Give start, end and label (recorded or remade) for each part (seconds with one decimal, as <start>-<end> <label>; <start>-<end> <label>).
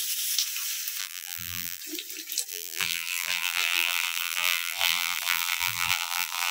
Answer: 0.0-1.0 recorded; 1.0-1.8 remade; 1.8-2.5 recorded; 2.5-6.5 remade